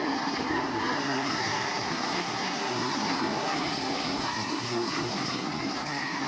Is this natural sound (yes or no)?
no